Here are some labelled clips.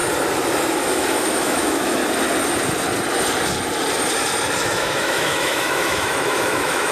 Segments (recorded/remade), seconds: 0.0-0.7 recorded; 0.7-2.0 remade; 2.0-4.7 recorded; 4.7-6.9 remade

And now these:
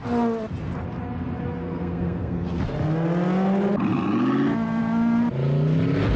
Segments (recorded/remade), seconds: 0.0-1.6 recorded; 1.6-2.6 remade; 2.6-6.2 recorded

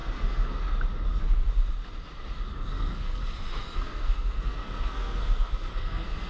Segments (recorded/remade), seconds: 0.0-0.6 remade; 0.6-2.5 recorded; 2.5-3.2 remade; 3.2-3.6 recorded; 3.6-6.3 remade

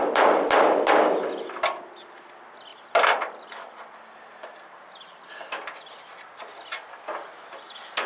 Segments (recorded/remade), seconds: 0.0-8.1 recorded

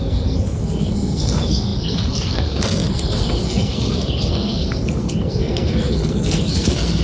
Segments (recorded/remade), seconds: 0.0-7.0 remade

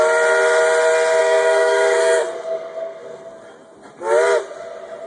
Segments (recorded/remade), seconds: 0.0-1.2 recorded; 1.2-3.3 remade; 3.3-5.1 recorded

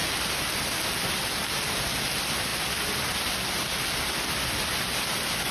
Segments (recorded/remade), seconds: 0.0-5.5 recorded